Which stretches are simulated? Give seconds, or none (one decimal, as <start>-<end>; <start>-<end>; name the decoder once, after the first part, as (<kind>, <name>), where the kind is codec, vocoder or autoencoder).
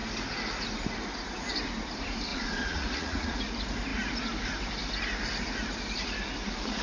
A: 2.3-3.4 (vocoder, Vocos)